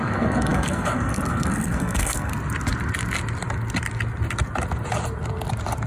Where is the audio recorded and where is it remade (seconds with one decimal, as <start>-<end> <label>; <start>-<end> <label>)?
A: 0.0-2.3 remade; 2.3-5.9 recorded